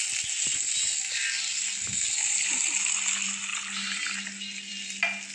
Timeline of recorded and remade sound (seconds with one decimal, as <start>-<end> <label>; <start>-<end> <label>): 0.0-5.3 recorded